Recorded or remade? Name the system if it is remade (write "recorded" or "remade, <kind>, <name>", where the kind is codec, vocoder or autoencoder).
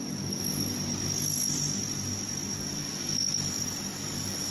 recorded